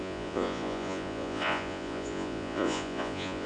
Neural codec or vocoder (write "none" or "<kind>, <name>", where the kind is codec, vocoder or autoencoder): vocoder, Vocos